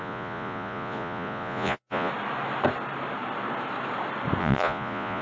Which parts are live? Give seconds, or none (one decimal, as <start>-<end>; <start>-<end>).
2.1-4.4